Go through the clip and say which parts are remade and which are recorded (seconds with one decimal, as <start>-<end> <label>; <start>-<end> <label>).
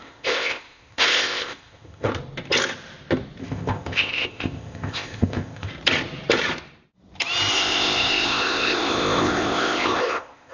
0.0-2.1 remade; 2.1-3.4 recorded; 3.4-5.7 remade; 5.7-7.5 recorded; 7.5-10.5 remade